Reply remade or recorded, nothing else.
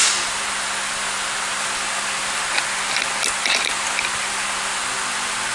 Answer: recorded